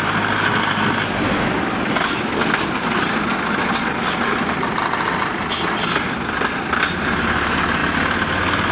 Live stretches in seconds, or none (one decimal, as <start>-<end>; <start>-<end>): 0.0-8.7